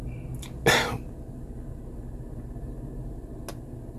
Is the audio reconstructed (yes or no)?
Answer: no